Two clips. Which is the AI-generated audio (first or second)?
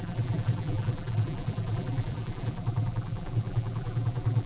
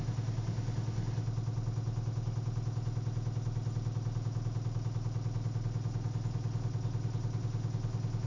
first